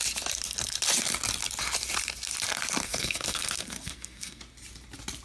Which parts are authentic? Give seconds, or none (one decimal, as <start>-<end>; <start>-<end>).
0.0-2.8; 4.4-5.2